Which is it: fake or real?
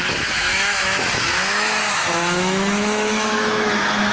fake